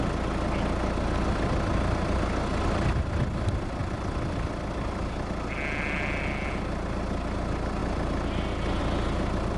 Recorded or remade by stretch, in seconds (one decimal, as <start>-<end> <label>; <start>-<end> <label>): 0.0-9.6 recorded